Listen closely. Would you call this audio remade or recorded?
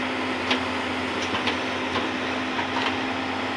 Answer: recorded